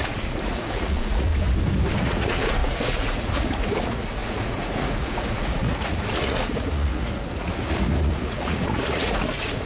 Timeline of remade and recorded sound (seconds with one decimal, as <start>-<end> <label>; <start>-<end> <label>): 0.0-1.3 remade; 1.3-2.0 recorded; 2.0-9.7 remade